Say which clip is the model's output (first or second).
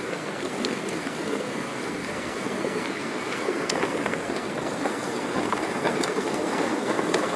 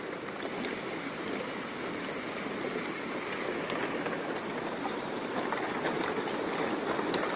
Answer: first